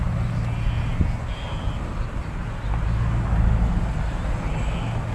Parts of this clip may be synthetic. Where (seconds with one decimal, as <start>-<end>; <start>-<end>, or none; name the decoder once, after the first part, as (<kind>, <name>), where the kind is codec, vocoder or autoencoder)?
none